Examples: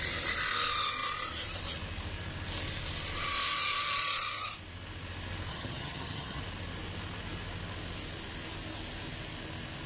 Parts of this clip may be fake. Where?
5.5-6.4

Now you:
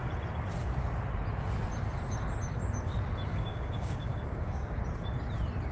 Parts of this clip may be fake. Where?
3.3-4.8

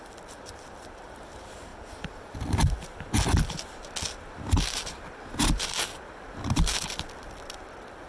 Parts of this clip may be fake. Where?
0.0-1.7; 6.3-8.1